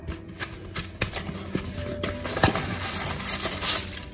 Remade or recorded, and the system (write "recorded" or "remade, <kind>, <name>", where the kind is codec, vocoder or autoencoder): recorded